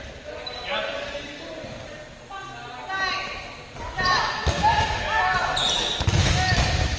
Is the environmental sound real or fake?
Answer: real